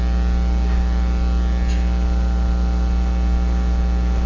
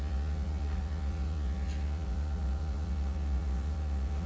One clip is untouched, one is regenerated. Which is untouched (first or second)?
first